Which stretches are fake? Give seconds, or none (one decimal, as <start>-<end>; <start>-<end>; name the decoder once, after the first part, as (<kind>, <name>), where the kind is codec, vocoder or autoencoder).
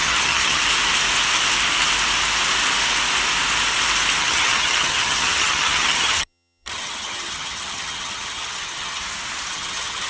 0.0-0.6 (vocoder, HiFi-GAN); 4.2-9.0; 9.5-10.1